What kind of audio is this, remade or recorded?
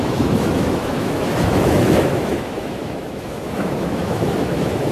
remade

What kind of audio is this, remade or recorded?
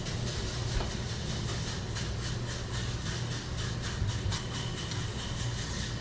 recorded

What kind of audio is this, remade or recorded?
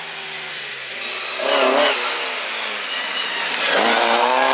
recorded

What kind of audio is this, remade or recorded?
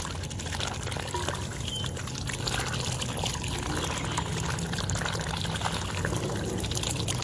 recorded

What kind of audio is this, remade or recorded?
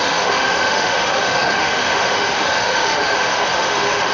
remade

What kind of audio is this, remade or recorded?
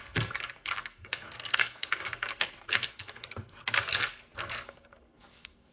remade